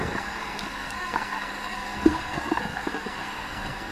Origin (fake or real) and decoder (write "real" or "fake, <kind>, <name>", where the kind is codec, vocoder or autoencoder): fake, codec, SNAC